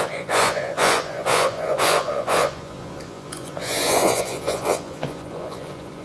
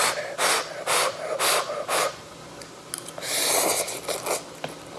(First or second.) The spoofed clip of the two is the first